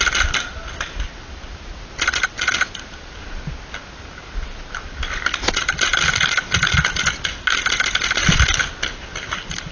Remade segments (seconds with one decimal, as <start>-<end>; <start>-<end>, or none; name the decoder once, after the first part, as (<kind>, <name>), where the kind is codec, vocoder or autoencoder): none